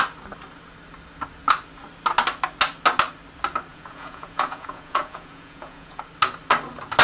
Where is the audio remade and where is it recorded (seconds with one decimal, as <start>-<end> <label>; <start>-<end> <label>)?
0.0-3.7 recorded; 3.7-6.0 remade; 6.0-7.0 recorded